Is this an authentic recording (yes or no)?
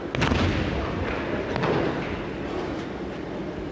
yes